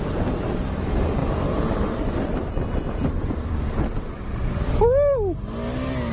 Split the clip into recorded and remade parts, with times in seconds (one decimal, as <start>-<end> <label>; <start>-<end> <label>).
0.0-1.2 recorded; 1.2-4.7 remade; 4.7-6.1 recorded